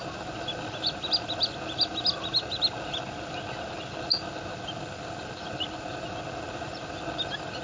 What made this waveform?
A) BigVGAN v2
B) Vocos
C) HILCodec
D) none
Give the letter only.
D